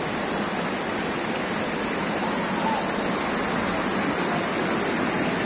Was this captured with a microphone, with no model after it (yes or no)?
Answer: yes